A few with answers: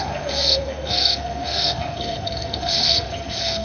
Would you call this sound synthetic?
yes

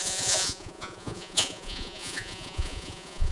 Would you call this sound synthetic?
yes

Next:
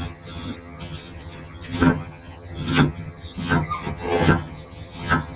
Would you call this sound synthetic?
yes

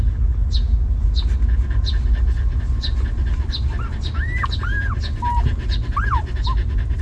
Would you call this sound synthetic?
no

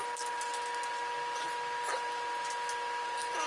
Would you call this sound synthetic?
no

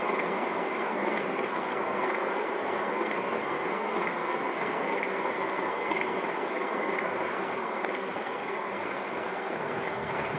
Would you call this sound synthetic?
yes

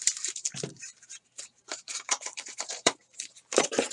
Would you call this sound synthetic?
yes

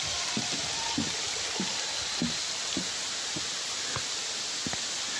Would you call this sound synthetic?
no